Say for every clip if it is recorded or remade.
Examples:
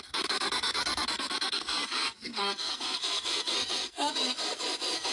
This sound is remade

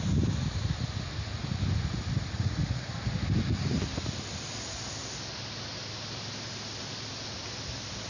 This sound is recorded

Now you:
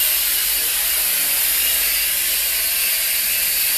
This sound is recorded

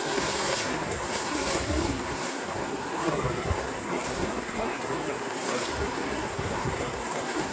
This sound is remade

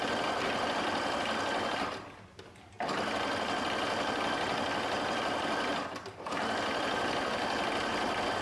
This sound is recorded